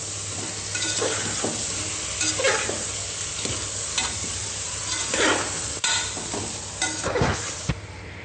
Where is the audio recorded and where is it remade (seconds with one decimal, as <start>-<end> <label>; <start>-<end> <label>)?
0.0-8.2 recorded